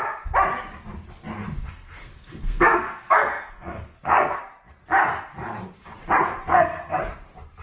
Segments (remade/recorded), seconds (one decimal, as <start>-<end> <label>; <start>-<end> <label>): 0.0-1.6 recorded; 1.6-4.4 remade; 4.4-6.5 recorded; 6.5-7.0 remade; 7.0-7.6 recorded